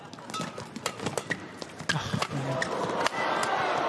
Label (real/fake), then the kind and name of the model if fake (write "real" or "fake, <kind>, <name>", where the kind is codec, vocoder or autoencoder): real